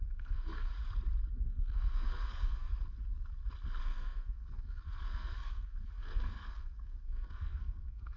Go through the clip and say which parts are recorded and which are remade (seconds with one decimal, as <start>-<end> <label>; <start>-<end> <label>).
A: 0.0-0.7 remade; 0.7-1.3 recorded; 1.3-2.7 remade; 2.7-3.8 recorded; 3.8-8.2 remade